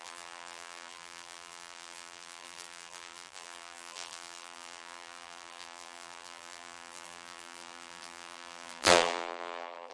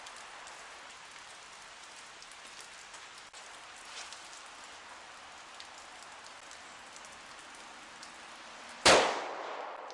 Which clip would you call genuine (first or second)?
second